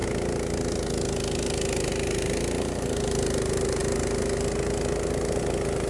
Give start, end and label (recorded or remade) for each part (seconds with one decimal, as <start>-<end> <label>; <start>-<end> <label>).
0.0-5.9 recorded

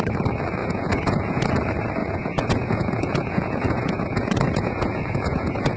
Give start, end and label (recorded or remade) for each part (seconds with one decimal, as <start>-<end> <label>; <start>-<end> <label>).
0.0-0.6 recorded; 0.6-1.5 remade; 1.5-2.0 recorded; 2.0-5.8 remade

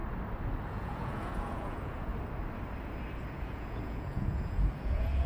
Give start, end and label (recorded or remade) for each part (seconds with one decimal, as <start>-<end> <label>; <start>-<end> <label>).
0.0-0.7 recorded; 0.7-2.1 remade; 2.1-3.3 recorded; 3.3-5.3 remade

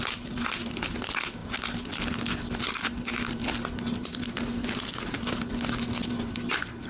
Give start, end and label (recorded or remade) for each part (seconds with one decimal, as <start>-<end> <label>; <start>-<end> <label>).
0.0-6.9 recorded

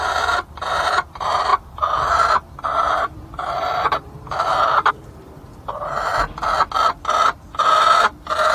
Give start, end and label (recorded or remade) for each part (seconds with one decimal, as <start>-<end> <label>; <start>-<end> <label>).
0.0-6.1 remade; 6.1-8.5 recorded

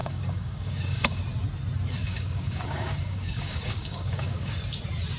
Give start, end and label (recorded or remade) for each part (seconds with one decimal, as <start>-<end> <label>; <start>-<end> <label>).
0.0-1.2 remade; 1.2-2.0 recorded; 2.0-4.8 remade; 4.8-5.2 recorded